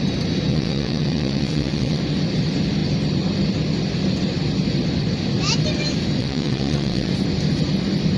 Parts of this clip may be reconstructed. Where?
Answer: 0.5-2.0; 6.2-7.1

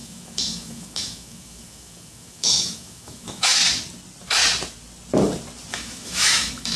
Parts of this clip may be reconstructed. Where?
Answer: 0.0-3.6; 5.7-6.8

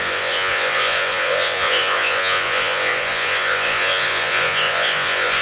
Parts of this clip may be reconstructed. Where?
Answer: 0.0-5.4